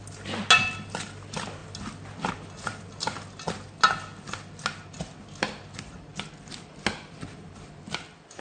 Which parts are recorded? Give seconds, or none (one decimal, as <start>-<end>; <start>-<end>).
0.0-8.4